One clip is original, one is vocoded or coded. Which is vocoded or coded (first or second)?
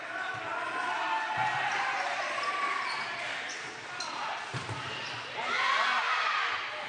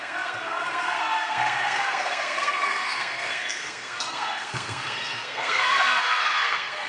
second